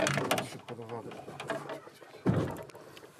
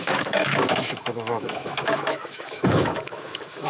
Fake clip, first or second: second